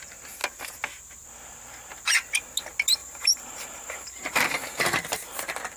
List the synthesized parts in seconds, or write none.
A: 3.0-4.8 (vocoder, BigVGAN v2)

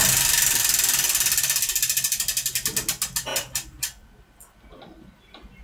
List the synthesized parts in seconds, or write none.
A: 3.3-4.1 (vocoder, BigVGAN v2)

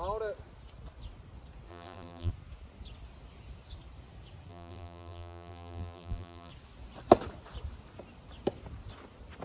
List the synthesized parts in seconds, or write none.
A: 1.7-2.3 (vocoder, BigVGAN v2); 4.5-6.5

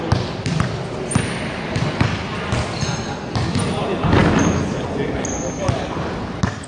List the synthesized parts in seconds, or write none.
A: none